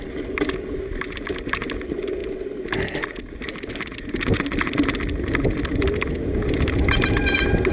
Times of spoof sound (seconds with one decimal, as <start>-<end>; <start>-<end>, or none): none